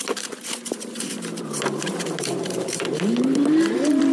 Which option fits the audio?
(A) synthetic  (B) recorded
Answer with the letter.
A